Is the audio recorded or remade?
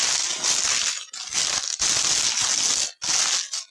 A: recorded